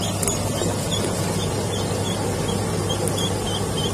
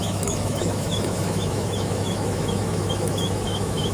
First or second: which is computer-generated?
second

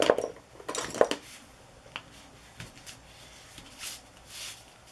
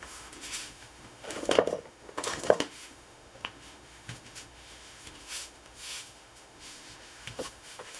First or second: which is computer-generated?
second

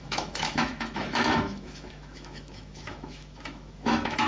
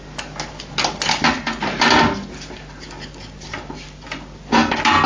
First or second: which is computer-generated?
first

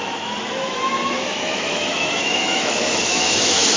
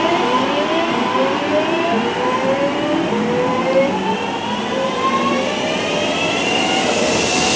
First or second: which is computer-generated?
first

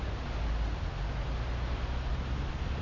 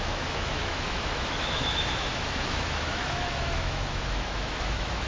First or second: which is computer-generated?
second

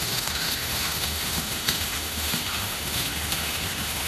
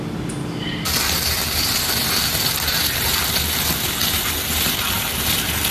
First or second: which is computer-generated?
first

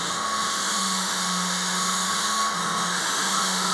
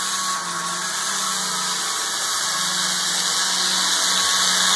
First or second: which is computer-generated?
first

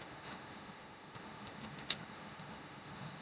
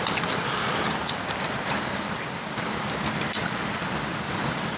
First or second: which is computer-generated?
first